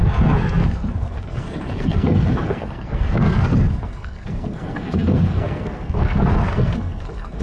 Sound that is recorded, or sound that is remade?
remade